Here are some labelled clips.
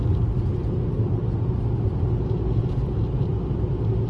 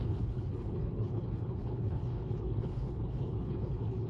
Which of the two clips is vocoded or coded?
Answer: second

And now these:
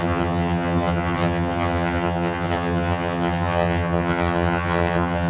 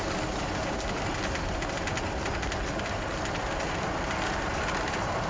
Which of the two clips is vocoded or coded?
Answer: first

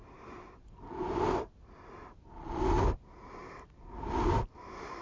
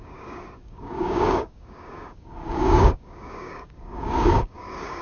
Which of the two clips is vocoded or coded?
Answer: second